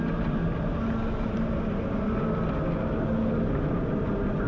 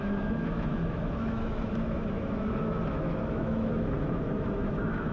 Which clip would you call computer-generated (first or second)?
second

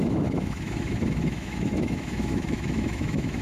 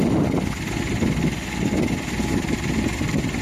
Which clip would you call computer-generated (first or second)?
first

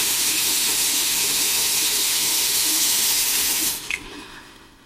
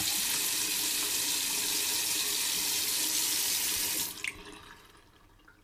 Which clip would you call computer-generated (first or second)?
first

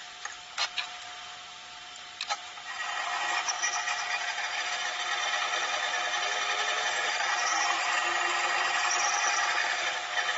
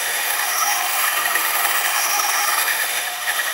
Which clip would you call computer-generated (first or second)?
second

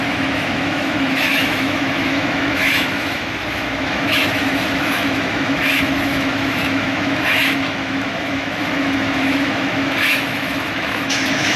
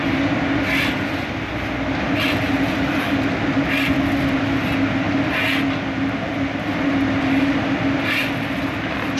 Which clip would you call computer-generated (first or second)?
first